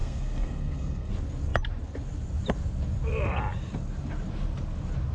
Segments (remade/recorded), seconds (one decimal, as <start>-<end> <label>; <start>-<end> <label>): 0.0-1.1 remade; 1.1-5.1 recorded